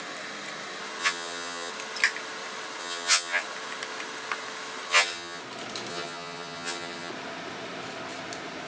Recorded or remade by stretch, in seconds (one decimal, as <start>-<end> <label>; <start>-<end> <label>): 0.0-1.0 recorded; 1.0-1.7 remade; 1.7-2.8 recorded; 2.8-3.4 remade; 3.4-4.9 recorded; 4.9-5.4 remade; 5.4-5.9 recorded; 5.9-7.1 remade; 7.1-8.7 recorded